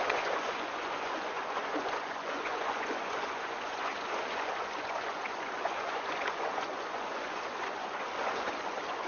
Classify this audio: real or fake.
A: fake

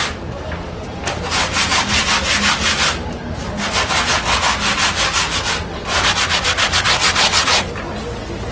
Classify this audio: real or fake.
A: real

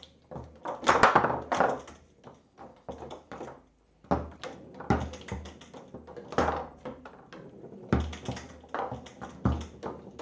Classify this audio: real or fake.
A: real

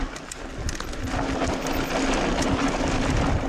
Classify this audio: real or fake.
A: real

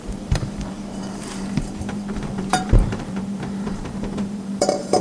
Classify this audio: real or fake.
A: fake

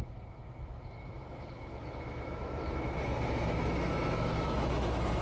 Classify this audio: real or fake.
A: fake